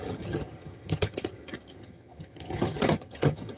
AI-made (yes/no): yes